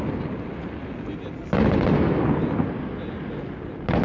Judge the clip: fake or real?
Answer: real